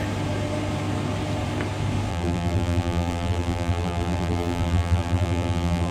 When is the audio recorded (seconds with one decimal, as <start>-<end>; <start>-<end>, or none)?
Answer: 0.0-2.1